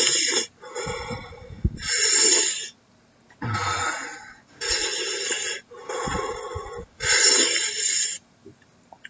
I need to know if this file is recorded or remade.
recorded